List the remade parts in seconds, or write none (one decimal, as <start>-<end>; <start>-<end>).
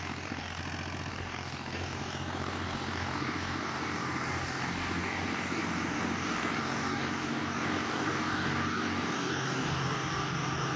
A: 0.0-0.6; 1.1-10.8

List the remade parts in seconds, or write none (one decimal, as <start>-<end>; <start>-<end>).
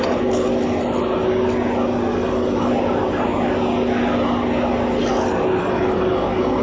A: 2.1-2.7; 5.6-6.6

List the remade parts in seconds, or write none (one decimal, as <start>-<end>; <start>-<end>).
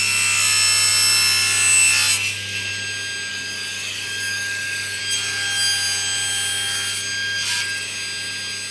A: 3.3-5.0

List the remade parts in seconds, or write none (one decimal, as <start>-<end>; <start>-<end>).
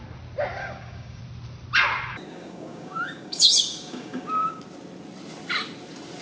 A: 0.6-1.2; 2.1-4.6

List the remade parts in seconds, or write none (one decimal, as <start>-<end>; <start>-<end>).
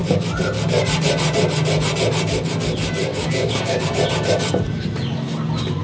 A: 3.1-3.8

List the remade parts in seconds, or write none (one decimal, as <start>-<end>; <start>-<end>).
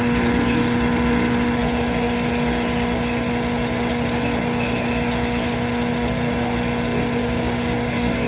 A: 7.2-8.3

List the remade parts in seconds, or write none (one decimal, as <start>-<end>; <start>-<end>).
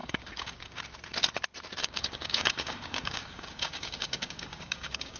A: 0.0-0.8; 1.8-5.2